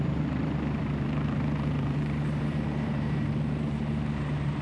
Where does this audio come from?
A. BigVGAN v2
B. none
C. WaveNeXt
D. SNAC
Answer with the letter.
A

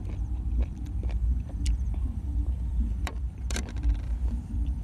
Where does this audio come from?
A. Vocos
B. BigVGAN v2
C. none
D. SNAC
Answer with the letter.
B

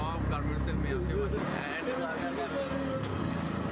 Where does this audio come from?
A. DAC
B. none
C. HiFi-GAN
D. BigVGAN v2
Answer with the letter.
B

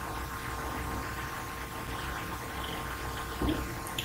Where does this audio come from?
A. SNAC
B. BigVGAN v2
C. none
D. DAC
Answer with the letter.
C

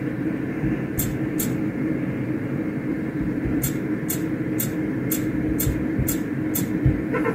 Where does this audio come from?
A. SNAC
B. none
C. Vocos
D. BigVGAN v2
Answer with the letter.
D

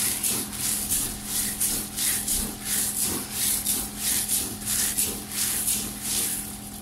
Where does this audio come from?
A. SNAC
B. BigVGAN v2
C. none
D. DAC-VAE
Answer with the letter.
B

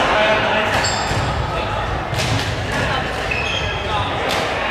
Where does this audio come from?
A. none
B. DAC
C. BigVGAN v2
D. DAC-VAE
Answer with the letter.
A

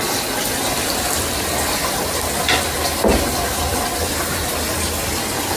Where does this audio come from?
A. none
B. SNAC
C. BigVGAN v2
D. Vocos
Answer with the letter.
C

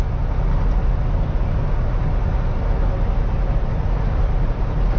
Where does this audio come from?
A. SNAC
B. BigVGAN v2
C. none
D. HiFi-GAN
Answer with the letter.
C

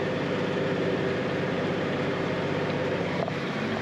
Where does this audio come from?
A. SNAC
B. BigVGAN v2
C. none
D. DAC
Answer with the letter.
B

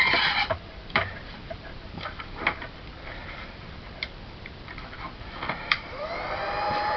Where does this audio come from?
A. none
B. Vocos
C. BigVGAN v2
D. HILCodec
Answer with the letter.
C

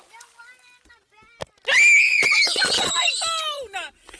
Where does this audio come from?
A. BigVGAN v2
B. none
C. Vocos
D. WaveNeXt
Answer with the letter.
B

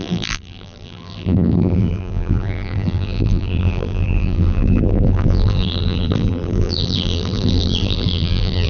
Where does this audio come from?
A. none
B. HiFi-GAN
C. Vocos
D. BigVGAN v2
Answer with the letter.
D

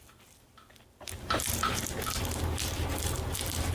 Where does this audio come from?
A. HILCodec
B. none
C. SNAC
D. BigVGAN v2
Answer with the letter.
D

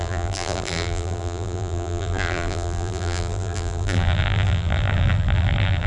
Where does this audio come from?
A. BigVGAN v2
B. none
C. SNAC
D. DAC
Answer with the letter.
A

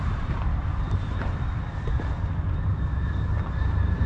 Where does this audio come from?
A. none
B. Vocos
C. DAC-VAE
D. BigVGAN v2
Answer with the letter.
D